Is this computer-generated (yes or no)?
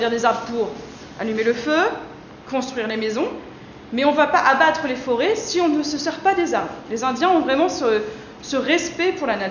no